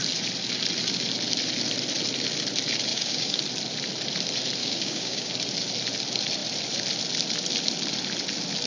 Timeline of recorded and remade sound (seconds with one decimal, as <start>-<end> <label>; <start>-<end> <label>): 0.0-2.9 recorded; 2.9-3.4 remade; 3.4-4.6 recorded; 4.6-5.3 remade; 5.3-8.7 recorded